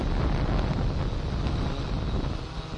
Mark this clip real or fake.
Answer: real